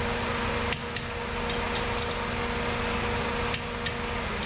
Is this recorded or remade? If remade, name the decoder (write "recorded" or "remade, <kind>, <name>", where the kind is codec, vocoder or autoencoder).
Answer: recorded